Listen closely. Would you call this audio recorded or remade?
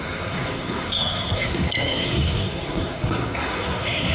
remade